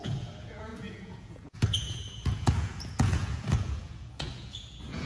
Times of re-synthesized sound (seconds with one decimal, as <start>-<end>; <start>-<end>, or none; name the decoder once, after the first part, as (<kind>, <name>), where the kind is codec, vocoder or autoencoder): 0.0-5.1 (vocoder, Vocos)